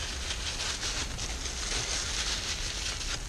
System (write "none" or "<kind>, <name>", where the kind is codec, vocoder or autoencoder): none